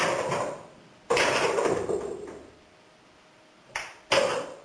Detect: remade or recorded recorded